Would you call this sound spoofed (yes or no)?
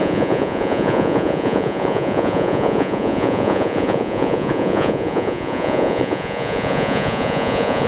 yes